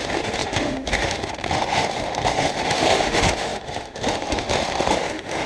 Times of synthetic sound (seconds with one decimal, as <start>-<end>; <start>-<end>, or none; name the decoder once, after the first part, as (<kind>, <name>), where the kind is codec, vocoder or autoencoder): 0.0-5.5 (autoencoder, DAC-VAE)